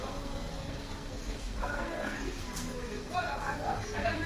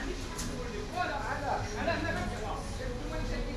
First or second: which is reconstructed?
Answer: first